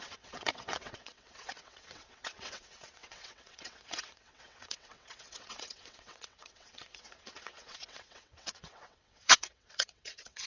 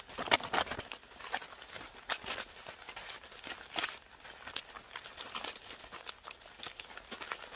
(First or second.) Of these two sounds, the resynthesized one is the first